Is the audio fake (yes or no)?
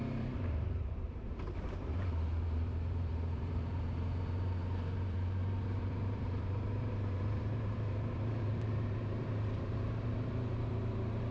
yes